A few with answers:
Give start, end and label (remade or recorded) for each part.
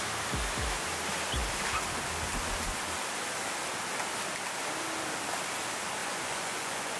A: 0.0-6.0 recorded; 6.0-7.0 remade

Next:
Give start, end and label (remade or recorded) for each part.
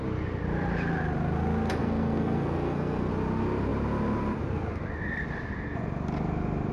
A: 0.0-1.8 recorded; 1.8-3.1 remade; 3.1-6.7 recorded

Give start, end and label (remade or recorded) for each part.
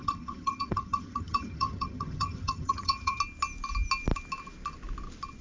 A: 0.0-3.2 remade; 3.2-5.4 recorded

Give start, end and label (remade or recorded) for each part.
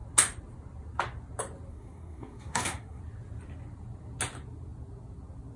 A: 0.0-1.7 recorded; 1.7-3.0 remade; 3.0-5.6 recorded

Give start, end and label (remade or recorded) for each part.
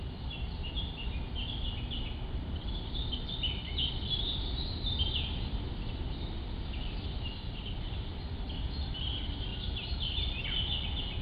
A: 0.0-9.5 recorded; 9.5-10.3 remade; 10.3-11.2 recorded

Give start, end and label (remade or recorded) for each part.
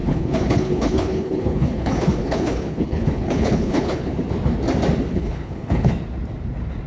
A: 0.0-4.1 remade; 4.1-5.1 recorded; 5.1-5.9 remade; 5.9-6.9 recorded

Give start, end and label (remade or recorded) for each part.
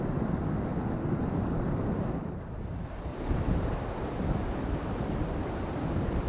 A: 0.0-3.1 recorded; 3.1-6.3 remade